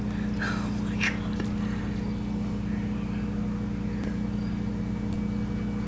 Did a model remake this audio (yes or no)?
no